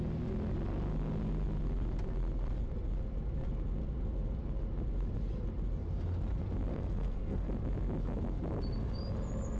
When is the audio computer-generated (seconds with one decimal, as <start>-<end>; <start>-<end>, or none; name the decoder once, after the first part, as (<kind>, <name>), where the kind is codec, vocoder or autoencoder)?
6.7-7.5 (codec, SNAC)